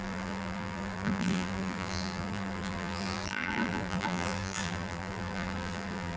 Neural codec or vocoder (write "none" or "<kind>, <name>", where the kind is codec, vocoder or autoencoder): vocoder, BigVGAN v2